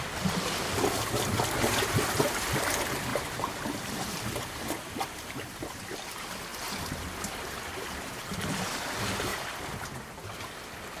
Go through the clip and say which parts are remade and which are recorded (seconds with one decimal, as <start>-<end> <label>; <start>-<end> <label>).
0.0-3.1 recorded; 3.1-5.8 remade; 5.8-11.0 recorded

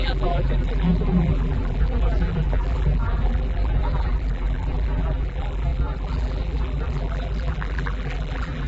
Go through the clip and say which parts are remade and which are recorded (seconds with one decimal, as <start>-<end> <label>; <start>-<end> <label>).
0.0-8.7 remade

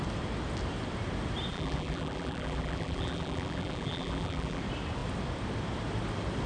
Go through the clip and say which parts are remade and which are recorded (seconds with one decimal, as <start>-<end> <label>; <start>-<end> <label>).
0.0-1.5 recorded; 1.5-4.6 remade; 4.6-6.5 recorded

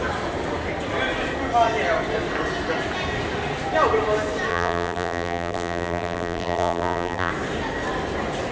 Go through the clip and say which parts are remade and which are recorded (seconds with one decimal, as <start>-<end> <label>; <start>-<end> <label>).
0.0-4.5 recorded; 4.5-7.3 remade; 7.3-8.5 recorded

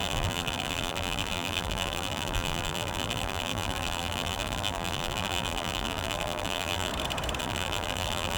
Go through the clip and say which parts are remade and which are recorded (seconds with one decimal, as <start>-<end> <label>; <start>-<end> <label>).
0.0-6.9 remade; 6.9-7.4 recorded; 7.4-8.4 remade

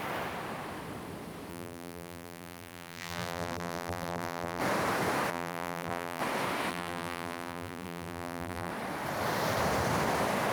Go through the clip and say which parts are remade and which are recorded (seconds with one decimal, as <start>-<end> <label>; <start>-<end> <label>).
0.0-1.5 recorded; 1.5-4.6 remade; 4.6-5.3 recorded; 5.3-6.2 remade; 6.2-6.7 recorded; 6.7-8.7 remade; 8.7-10.5 recorded